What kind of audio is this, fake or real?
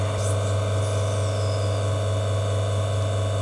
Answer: real